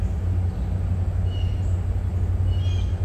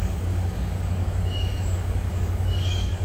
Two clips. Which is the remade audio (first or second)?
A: second